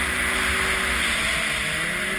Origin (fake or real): real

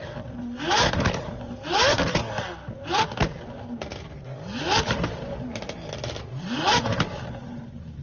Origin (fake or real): fake